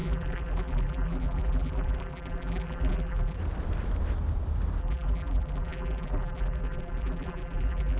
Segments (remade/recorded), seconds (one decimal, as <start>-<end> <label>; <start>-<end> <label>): 0.0-3.4 remade; 3.4-4.8 recorded; 4.8-8.0 remade